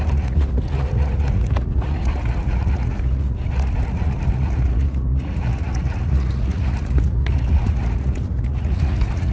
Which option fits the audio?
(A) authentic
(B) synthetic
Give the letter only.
B